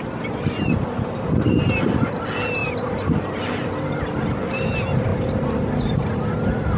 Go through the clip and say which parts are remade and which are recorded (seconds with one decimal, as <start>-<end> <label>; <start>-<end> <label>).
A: 0.0-6.8 recorded